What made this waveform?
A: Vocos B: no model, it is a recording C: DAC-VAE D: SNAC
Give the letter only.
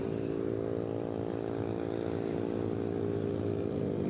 B